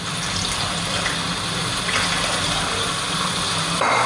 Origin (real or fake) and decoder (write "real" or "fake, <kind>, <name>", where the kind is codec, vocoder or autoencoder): real